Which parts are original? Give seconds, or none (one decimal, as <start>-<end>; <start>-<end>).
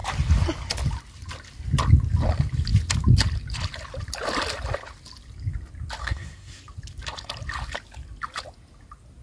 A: 0.0-6.0; 6.6-9.2